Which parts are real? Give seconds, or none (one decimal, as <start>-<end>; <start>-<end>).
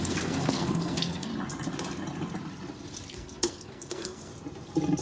1.3-3.1; 4.3-5.0